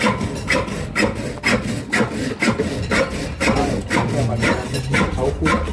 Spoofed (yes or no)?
no